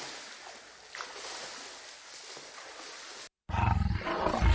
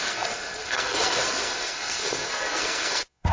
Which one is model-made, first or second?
second